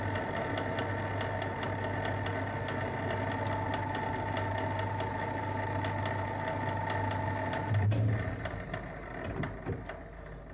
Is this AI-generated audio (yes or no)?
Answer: no